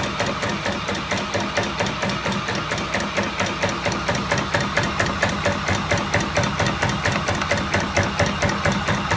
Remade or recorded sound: recorded